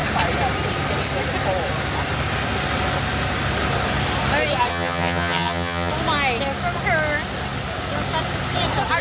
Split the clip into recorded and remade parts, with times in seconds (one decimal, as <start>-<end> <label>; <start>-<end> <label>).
0.0-4.7 recorded; 4.7-5.9 remade; 5.9-9.0 recorded